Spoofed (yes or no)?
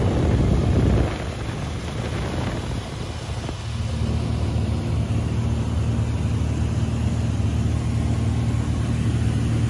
no